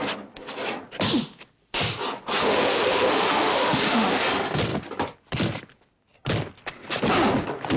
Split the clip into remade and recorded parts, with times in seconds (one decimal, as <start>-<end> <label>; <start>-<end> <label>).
0.0-2.4 recorded; 2.4-4.2 remade; 4.2-7.8 recorded